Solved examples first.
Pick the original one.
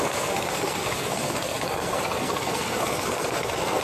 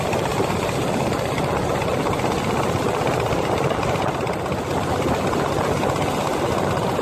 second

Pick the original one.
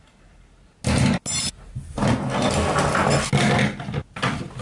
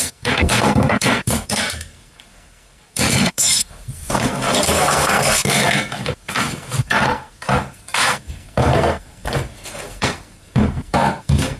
first